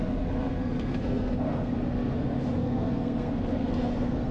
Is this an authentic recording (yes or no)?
no